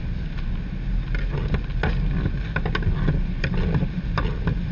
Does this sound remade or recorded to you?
recorded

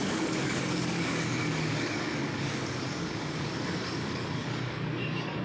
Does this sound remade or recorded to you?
remade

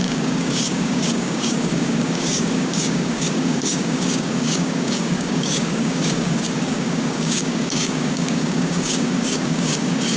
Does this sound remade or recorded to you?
remade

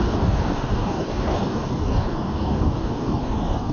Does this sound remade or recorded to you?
remade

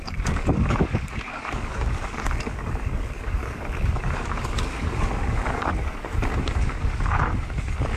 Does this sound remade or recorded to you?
remade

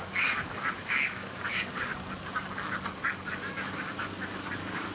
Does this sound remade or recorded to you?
remade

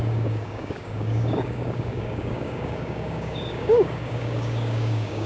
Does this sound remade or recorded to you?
remade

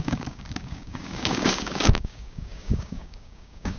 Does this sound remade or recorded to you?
remade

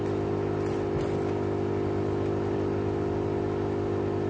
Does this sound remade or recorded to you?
recorded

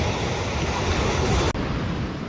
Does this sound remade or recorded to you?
recorded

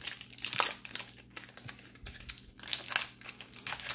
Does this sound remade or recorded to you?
recorded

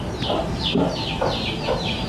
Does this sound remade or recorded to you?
recorded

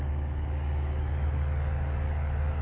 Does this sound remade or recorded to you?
remade